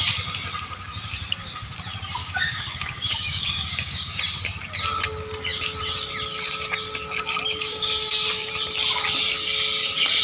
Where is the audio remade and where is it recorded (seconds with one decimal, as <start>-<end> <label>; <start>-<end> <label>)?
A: 0.0-2.2 recorded; 2.2-4.2 remade; 4.2-7.7 recorded; 7.7-8.5 remade; 8.5-10.2 recorded